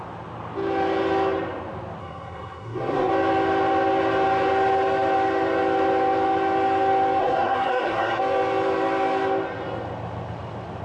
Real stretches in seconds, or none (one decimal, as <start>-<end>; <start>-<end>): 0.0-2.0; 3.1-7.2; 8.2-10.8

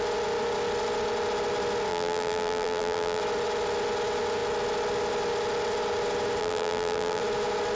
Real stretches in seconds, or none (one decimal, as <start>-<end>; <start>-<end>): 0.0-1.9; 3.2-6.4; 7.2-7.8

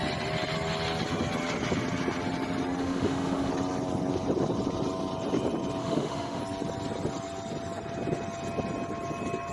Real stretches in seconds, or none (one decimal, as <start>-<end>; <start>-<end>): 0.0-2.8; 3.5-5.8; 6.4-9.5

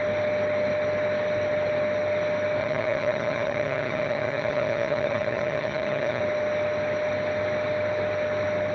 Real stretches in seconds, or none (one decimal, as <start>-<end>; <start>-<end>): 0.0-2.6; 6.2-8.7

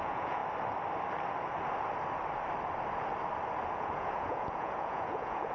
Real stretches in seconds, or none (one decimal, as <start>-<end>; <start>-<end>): 0.4-3.7

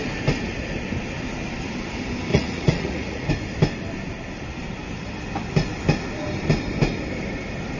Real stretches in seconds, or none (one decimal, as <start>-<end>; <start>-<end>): 0.0-2.3; 3.3-7.8